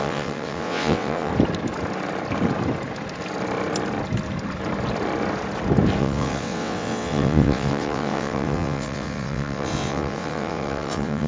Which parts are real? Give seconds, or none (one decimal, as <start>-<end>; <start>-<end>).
1.3-6.0